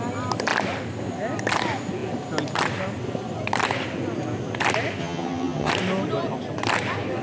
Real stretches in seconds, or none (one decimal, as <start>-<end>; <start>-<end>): 0.0-5.0; 5.7-7.2